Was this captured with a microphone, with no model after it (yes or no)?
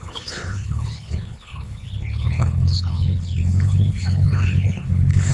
no